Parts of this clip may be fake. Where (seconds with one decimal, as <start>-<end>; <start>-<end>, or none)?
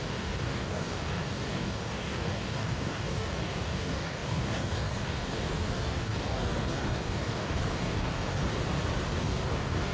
0.0-8.4; 9.1-9.9